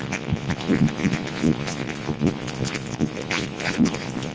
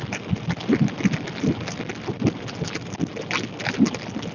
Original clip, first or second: second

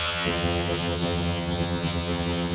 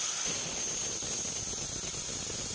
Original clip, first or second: second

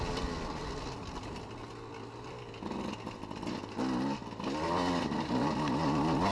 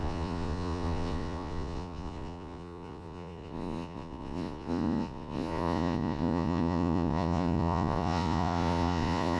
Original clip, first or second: first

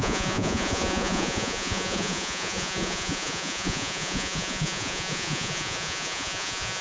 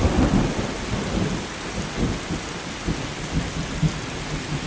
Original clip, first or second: second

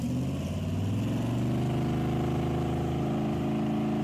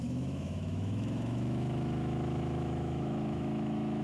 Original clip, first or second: first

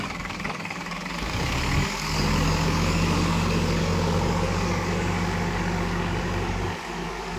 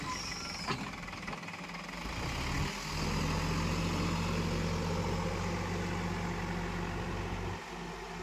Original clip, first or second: second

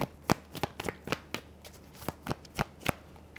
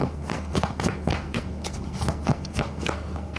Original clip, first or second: first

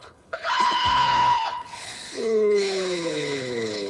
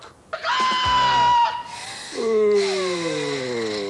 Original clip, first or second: second